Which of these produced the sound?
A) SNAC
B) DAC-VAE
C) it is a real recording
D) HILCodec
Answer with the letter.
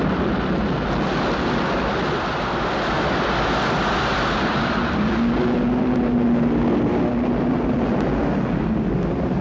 C